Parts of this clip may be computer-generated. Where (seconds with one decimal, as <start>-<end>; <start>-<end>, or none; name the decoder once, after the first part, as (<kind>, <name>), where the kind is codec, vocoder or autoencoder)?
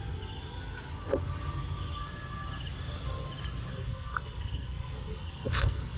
3.7-6.0 (codec, SNAC)